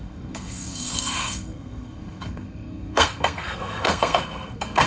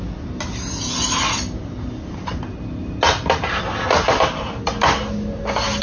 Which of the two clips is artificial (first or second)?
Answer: first